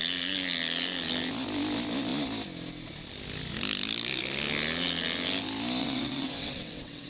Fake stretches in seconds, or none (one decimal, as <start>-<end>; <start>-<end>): 5.8-7.1